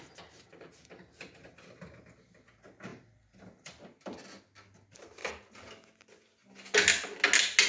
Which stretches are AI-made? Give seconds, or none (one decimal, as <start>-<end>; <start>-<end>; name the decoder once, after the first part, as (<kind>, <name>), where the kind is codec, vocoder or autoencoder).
0.5-1.5 (vocoder, BigVGAN v2); 2.9-4.0